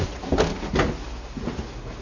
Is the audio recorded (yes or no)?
yes